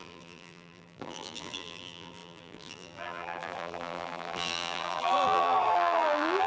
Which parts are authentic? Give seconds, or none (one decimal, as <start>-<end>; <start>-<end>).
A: none